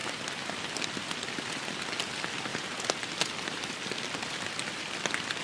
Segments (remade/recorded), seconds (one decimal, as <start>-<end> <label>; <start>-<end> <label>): 0.0-5.4 recorded